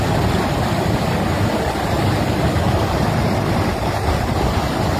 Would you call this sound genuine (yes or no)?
yes